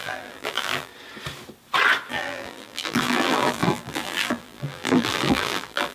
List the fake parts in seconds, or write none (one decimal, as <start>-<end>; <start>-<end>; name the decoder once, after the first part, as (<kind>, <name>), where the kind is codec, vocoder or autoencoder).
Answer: 0.0-0.9 (vocoder, BigVGAN v2); 2.1-5.9